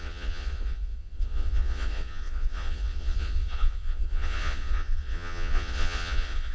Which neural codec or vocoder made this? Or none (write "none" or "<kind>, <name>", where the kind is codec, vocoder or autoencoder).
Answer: vocoder, Vocos